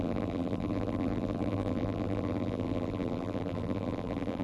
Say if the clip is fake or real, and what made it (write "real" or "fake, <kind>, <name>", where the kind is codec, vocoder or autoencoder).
fake, vocoder, BigVGAN v2